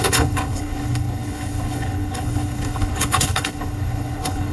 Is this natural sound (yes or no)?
no